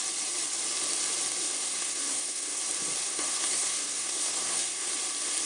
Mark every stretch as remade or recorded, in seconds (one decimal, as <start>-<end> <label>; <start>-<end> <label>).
0.0-1.4 recorded; 1.4-2.6 remade; 2.6-3.0 recorded; 3.0-4.9 remade; 4.9-5.5 recorded